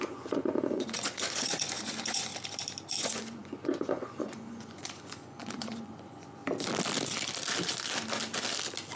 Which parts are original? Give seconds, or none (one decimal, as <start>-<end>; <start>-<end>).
2.3-3.0; 6.4-9.0